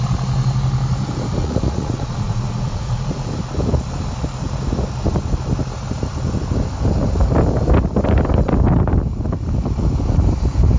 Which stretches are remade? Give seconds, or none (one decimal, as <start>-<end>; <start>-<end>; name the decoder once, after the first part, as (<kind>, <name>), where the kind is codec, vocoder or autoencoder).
1.4-3.3 (vocoder, Vocos)